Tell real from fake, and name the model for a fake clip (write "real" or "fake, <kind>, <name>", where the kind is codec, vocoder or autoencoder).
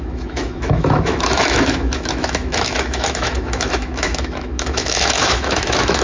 fake, autoencoder, DAC-VAE